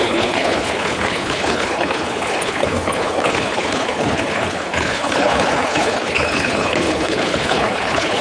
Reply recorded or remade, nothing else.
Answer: remade